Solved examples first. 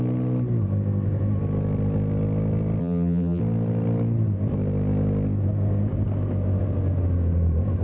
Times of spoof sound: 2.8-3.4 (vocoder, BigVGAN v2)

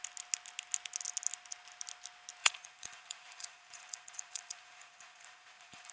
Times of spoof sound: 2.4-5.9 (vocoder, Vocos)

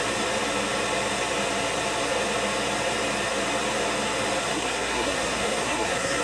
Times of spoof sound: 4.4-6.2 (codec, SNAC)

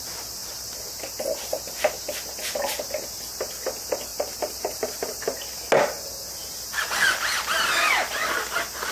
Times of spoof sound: 0.4-1.9 (vocoder, BigVGAN v2); 4.1-4.8